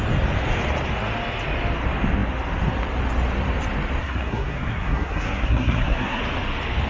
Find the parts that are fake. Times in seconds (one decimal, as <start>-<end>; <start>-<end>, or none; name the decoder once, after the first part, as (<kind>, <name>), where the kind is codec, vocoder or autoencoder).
4.0-6.2 (codec, SNAC)